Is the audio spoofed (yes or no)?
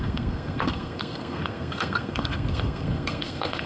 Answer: yes